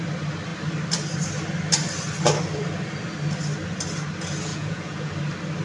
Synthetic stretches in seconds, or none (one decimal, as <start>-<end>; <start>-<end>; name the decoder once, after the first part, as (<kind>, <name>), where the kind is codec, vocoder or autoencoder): 4.5-5.1 (vocoder, Vocos)

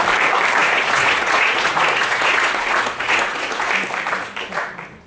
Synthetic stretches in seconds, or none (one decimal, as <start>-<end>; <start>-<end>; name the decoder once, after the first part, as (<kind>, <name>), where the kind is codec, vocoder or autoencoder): 0.6-3.7 (vocoder, Vocos)

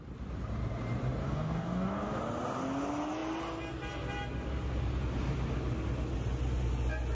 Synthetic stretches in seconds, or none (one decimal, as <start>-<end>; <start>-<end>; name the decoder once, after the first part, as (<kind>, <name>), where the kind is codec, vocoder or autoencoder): 1.2-2.2 (codec, DAC)

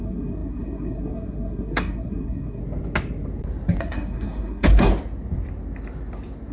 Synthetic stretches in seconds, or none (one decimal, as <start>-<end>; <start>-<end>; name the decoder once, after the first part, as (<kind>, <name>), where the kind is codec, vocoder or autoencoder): 0.0-2.6 (codec, SNAC); 3.8-4.9

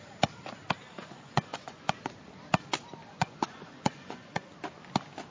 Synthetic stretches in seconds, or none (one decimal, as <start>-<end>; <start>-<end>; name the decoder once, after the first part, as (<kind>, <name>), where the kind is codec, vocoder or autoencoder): 0.8-2.0 (vocoder, Vocos); 3.0-4.5